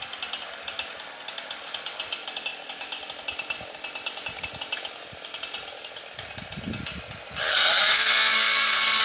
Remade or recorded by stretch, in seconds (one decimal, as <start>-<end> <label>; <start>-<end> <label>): 0.0-7.5 recorded; 7.5-9.0 remade